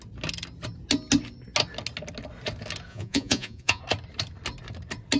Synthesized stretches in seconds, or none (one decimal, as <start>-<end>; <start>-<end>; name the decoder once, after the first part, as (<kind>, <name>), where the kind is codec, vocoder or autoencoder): 2.9-3.8 (vocoder, Vocos)